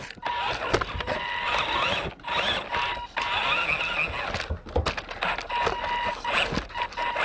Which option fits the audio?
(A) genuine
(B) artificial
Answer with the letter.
A